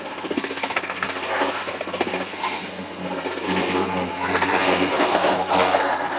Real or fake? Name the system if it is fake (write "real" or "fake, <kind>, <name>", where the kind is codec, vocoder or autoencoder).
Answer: fake, codec, SNAC